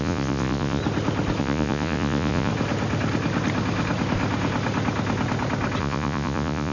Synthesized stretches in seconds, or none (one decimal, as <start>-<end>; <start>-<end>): 0.0-0.8; 1.4-2.5; 5.8-6.7